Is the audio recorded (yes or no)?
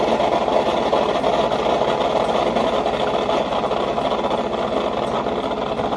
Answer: yes